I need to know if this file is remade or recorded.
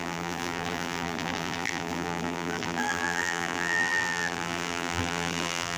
remade